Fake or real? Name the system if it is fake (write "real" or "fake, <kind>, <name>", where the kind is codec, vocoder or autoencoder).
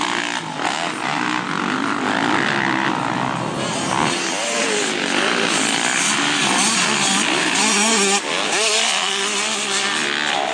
real